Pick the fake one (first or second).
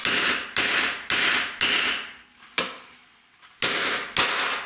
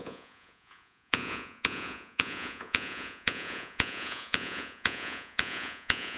second